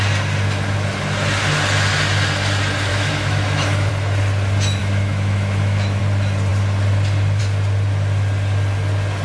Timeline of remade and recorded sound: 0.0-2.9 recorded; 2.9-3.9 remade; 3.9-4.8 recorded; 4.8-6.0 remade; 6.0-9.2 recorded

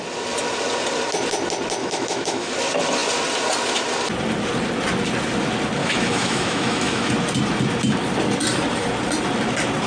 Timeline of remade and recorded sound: 0.0-1.8 recorded; 1.8-2.5 remade; 2.5-5.8 recorded; 5.8-7.1 remade; 7.1-9.9 recorded

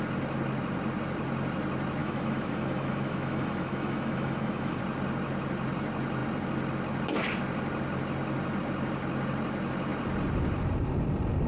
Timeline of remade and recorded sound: 0.0-2.0 recorded; 2.0-4.8 remade; 4.8-11.5 recorded